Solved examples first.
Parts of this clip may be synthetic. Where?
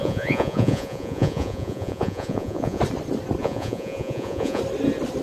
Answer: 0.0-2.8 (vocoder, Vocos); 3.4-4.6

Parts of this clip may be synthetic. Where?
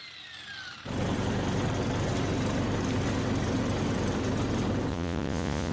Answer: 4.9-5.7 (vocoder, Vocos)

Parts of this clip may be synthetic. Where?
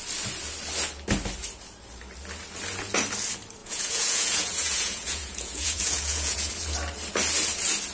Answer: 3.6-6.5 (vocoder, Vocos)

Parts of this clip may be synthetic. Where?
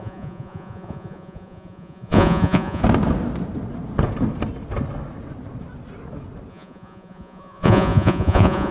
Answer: 0.0-2.8 (vocoder, Vocos); 6.5-8.7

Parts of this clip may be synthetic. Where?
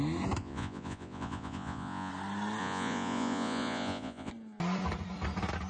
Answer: 0.4-2.1 (vocoder, Vocos); 2.6-4.3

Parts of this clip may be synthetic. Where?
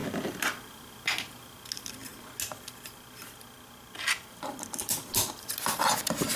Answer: none